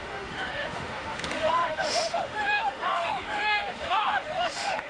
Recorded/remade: remade